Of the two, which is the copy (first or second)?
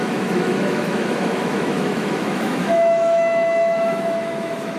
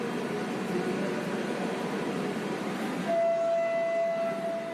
first